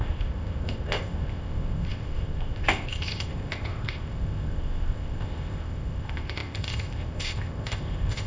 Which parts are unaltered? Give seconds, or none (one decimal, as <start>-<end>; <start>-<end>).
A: none